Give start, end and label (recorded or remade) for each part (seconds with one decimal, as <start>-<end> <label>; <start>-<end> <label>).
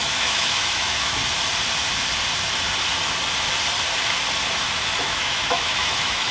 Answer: 0.0-1.2 remade; 1.2-5.0 recorded; 5.0-6.3 remade